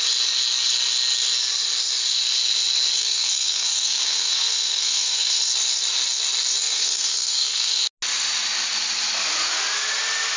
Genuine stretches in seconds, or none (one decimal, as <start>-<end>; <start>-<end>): 0.0-3.0; 5.5-6.6; 7.8-10.4